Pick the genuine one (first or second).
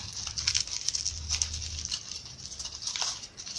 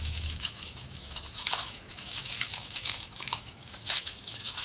first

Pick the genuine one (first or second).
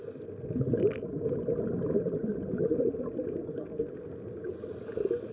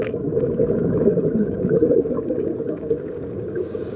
first